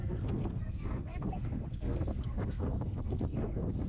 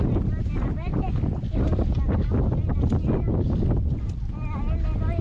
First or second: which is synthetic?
first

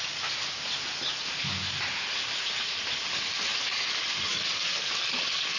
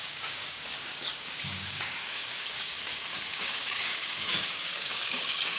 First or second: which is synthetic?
second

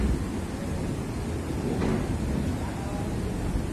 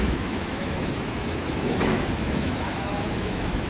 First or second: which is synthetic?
second